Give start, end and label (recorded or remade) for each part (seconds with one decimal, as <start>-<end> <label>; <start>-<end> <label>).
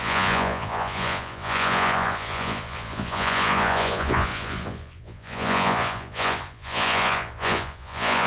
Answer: 0.0-8.3 remade